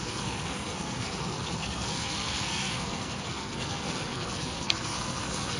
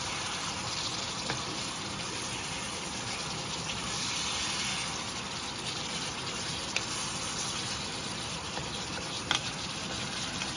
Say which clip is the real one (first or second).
second